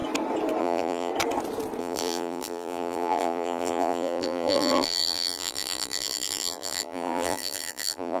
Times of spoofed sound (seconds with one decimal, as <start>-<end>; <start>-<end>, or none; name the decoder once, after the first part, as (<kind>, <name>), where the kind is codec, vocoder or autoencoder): 0.6-1.1 (vocoder, BigVGAN v2); 1.8-8.2